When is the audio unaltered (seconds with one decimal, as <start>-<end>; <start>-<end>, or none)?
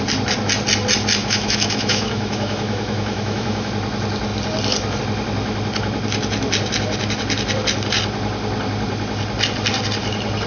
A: 0.0-1.2; 3.7-10.5